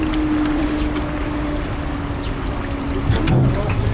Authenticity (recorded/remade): recorded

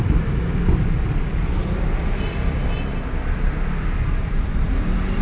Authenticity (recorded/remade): recorded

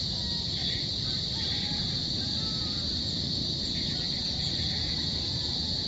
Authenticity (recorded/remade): recorded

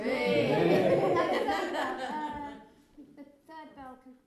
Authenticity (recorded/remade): recorded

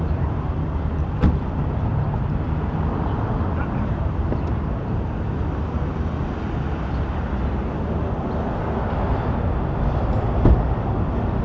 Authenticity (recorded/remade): recorded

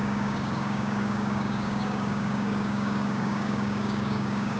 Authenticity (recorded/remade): remade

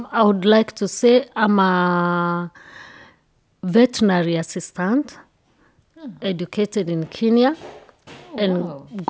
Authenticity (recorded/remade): recorded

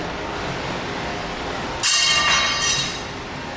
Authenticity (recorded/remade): recorded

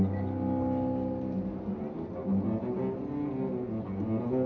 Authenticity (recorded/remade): recorded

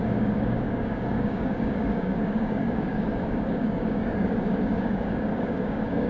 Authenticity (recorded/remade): remade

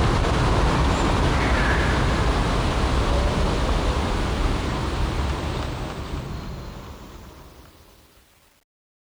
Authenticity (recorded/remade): recorded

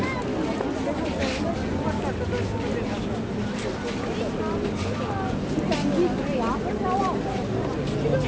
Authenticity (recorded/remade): recorded